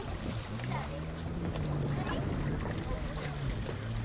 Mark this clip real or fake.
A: real